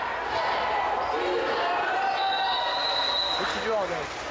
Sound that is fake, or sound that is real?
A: real